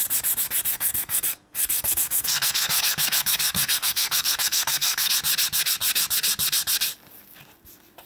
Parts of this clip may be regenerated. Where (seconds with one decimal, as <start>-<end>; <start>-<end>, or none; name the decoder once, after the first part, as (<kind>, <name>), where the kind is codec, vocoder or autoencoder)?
0.7-5.1 (codec, SNAC)